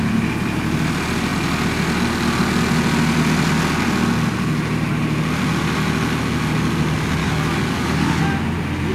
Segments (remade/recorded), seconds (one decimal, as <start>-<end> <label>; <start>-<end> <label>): 0.0-7.2 recorded; 7.2-8.2 remade; 8.2-8.9 recorded